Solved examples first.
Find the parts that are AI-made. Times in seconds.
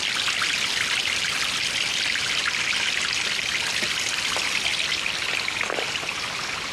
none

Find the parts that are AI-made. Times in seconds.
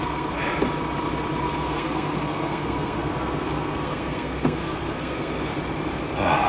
0.0-0.4 (codec, SNAC); 1.4-5.5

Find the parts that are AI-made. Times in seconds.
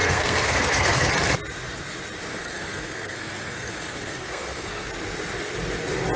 0.0-1.1 (codec, SNAC); 2.3-4.9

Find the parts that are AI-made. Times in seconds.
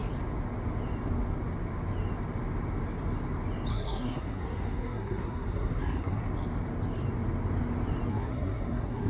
3.7-6.2 (codec, SNAC); 8.1-9.1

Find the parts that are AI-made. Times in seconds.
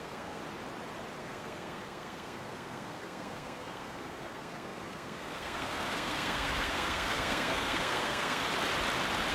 0.0-0.4 (codec, SNAC); 1.2-8.4